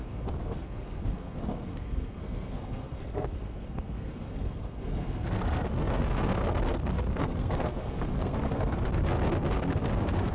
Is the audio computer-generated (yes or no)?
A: yes